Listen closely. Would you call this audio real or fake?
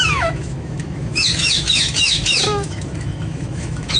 fake